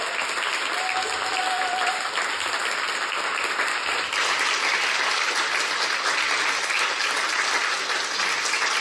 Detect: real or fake real